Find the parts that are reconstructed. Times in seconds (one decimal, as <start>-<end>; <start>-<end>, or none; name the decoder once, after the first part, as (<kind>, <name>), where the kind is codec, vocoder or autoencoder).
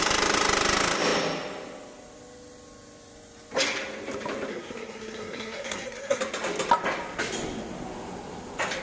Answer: 4.5-6.2 (codec, SNAC)